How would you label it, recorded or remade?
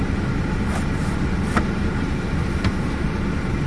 recorded